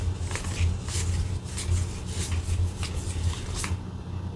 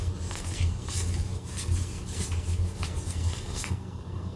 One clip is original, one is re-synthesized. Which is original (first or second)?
first